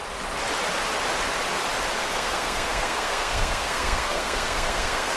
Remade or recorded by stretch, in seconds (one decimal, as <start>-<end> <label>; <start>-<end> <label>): 0.0-2.0 recorded; 2.0-5.2 remade